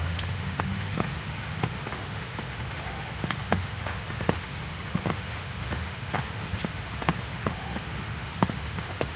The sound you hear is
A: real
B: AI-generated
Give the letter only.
B